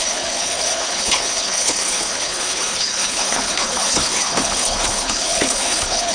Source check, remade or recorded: remade